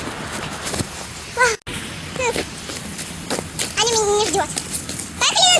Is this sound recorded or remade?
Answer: recorded